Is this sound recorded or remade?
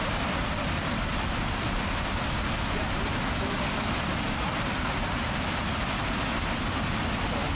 recorded